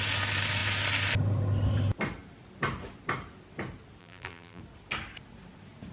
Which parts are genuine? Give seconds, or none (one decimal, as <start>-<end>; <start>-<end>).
0.0-4.0; 4.6-5.9